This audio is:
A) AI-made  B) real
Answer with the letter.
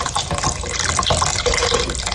B